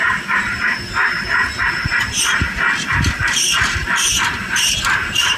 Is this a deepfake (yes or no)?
yes